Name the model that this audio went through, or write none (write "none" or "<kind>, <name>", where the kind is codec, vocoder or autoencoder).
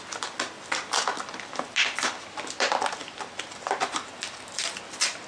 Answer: none